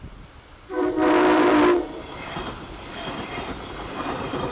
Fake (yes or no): yes